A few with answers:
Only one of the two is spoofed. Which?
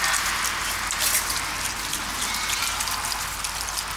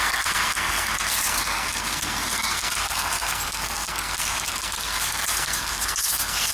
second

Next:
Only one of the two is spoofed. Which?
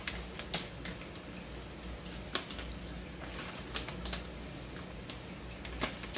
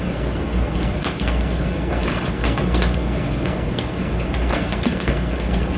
second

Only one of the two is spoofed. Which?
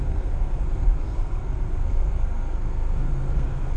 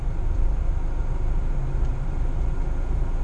first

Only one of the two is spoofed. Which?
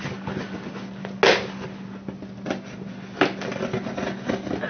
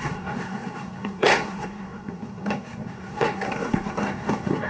second